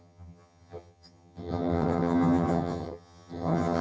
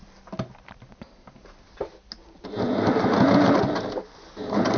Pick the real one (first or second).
second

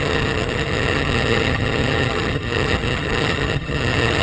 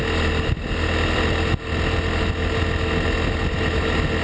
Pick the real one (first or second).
second